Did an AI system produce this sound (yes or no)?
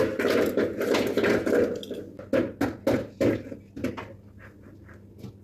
no